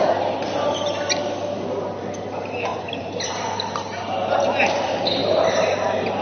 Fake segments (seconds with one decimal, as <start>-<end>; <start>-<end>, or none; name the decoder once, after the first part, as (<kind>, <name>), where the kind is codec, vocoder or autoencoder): 2.7-3.3 (vocoder, BigVGAN v2); 5.2-5.7